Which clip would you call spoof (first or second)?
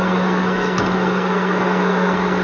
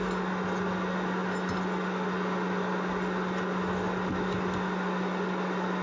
first